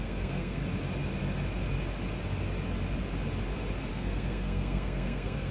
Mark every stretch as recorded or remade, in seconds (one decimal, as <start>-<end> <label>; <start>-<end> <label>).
0.0-0.6 remade; 0.6-3.9 recorded; 3.9-5.5 remade